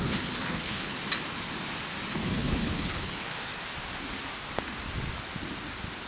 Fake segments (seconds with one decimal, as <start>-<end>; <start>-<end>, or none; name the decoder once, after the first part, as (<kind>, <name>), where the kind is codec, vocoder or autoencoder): 0.0-1.0 (codec, HILCodec); 2.1-3.5